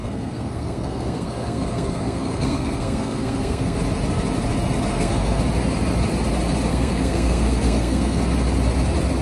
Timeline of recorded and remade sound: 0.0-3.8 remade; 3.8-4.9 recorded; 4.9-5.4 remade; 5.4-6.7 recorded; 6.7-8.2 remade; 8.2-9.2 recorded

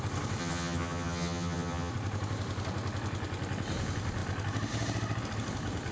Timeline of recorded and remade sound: 0.0-0.4 recorded; 0.4-1.9 remade; 1.9-5.9 recorded

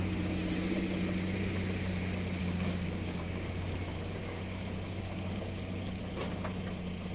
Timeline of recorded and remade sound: 0.0-2.4 recorded; 2.4-6.0 remade; 6.0-7.1 recorded

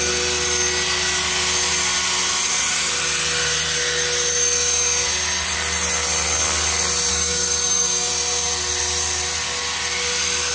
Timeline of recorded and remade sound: 0.0-7.1 recorded; 7.1-8.1 remade; 8.1-10.5 recorded

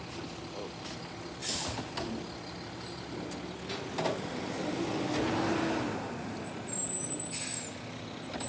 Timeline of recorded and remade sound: 0.0-8.5 recorded

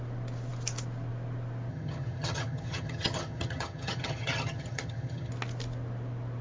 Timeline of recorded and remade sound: 0.0-1.7 recorded; 1.7-5.3 remade; 5.3-6.4 recorded